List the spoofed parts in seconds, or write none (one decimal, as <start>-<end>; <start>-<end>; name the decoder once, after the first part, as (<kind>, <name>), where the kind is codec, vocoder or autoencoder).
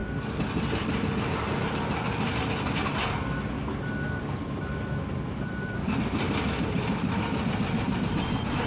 4.6-8.7 (vocoder, BigVGAN v2)